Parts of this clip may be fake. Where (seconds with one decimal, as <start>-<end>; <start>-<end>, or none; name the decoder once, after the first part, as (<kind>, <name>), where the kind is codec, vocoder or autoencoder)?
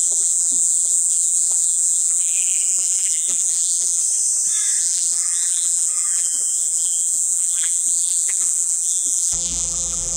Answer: 0.0-4.0 (vocoder, BigVGAN v2); 4.8-10.2